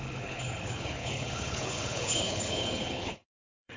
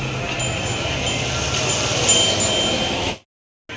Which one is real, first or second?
second